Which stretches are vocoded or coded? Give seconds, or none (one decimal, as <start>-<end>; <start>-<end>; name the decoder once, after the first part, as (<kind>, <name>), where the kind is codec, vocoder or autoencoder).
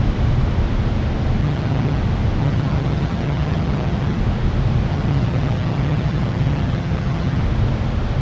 1.4-2.0 (vocoder, HiFi-GAN); 2.4-4.2; 4.9-7.4